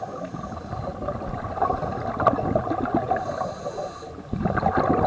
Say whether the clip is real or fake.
real